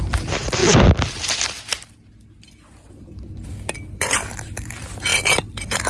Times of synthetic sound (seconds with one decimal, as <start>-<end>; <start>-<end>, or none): 0.0-0.6; 2.9-5.9